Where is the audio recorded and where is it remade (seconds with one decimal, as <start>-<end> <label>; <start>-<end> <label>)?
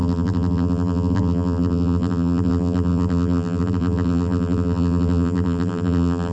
0.0-6.3 remade